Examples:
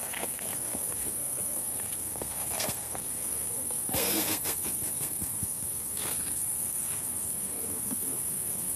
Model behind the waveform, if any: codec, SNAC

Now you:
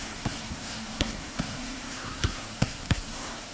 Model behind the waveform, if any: codec, SNAC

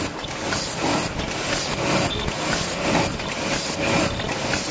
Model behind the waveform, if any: none